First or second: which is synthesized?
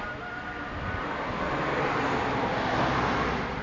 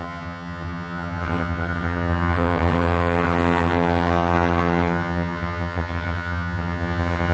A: second